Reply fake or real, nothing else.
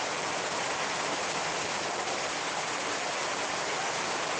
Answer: real